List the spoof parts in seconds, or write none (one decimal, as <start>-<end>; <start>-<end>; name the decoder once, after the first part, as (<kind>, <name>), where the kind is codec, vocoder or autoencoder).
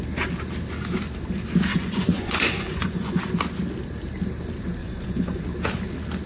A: 1.7-3.2 (vocoder, Vocos); 4.8-5.4